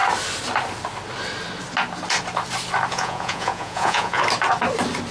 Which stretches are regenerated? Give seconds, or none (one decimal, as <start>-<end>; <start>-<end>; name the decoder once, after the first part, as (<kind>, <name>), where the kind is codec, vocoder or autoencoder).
2.9-4.2 (vocoder, Vocos)

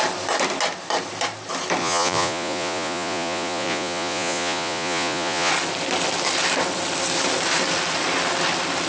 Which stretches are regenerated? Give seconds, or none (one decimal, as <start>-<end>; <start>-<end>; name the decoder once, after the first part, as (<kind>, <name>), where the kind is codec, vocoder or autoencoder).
1.8-5.5 (vocoder, Vocos)